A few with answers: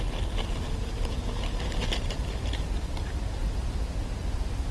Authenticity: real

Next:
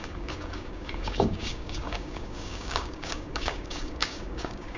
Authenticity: fake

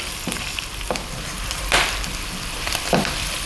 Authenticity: fake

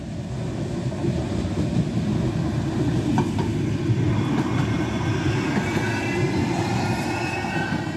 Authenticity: real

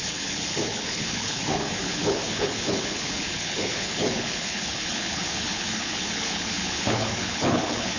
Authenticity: fake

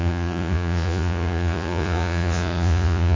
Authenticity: fake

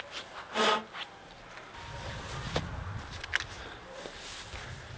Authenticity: real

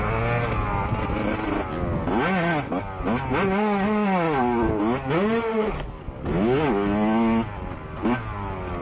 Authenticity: real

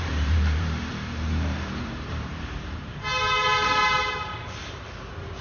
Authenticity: fake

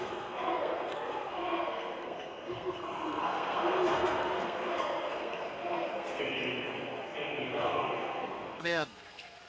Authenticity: fake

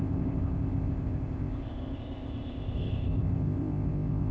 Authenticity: fake